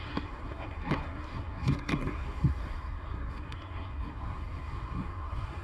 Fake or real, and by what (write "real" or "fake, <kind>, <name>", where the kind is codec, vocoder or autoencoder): fake, codec, SNAC